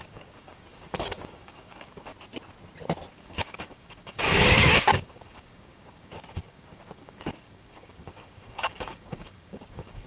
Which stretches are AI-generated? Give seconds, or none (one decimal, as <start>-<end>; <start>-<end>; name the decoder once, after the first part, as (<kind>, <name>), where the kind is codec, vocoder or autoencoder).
0.0-2.1 (codec, DAC); 3.1-10.1